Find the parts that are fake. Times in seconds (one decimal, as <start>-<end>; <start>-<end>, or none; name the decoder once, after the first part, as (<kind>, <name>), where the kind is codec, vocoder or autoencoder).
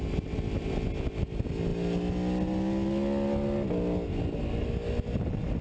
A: none